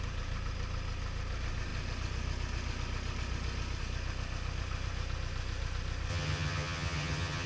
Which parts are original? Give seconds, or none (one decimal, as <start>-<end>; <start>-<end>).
0.0-6.1